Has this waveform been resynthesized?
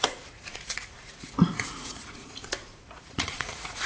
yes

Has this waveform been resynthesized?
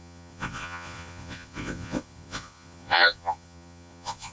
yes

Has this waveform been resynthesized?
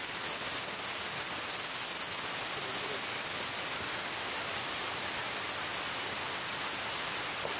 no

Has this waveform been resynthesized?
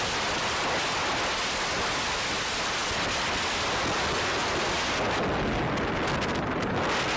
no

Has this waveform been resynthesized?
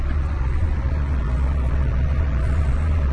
yes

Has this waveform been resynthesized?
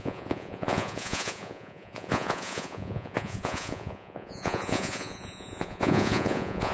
yes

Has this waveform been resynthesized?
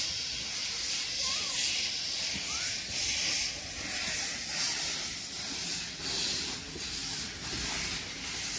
no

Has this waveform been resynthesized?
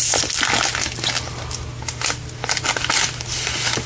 no